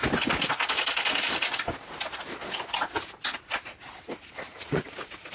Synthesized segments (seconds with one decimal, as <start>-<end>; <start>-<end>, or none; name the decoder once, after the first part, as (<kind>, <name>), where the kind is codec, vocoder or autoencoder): 4.5-5.3 (vocoder, Vocos)